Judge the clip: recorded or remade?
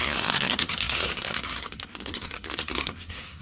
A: remade